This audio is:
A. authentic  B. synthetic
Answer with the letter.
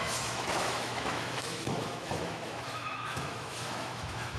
B